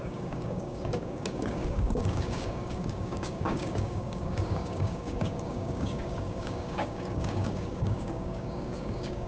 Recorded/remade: remade